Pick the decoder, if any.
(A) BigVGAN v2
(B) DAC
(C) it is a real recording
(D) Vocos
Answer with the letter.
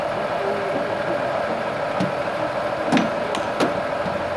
C